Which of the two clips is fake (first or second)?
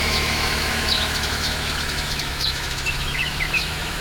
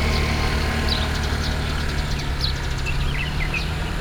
first